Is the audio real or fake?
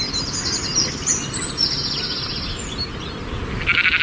real